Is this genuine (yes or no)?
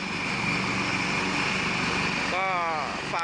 yes